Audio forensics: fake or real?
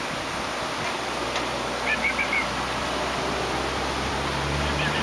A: real